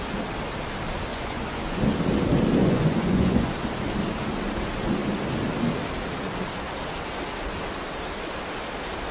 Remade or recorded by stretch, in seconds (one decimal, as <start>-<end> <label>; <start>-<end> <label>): 0.0-1.1 recorded; 1.1-1.8 remade; 1.8-2.6 recorded; 2.6-3.5 remade; 3.5-9.1 recorded